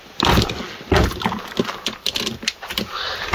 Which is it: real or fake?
real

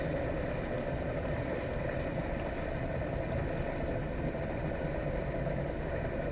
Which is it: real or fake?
real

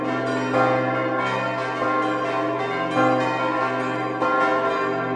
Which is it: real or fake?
real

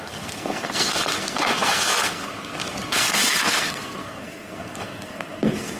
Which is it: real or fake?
fake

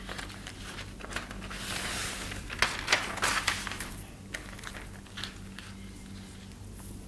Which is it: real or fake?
real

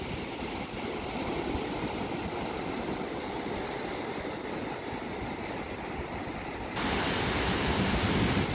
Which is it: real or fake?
real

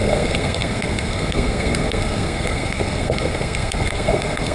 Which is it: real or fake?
fake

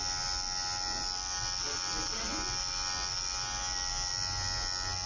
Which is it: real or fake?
real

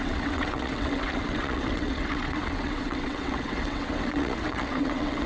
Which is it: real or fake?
fake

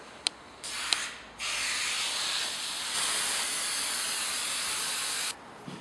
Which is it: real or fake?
real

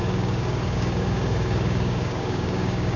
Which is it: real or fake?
fake